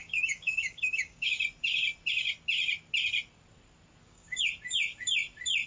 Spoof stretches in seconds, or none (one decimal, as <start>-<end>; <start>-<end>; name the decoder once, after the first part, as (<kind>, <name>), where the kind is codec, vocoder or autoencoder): 0.0-1.3 (codec, DAC); 4.0-4.5